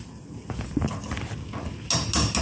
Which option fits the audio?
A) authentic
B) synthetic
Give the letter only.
A